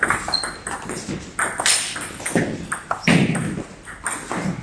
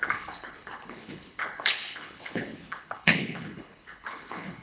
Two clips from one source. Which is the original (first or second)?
first